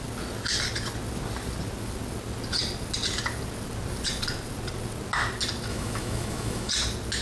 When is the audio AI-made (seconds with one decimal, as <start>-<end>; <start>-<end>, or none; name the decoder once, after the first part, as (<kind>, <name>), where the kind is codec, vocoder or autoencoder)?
5.7-6.7 (autoencoder, DAC-VAE)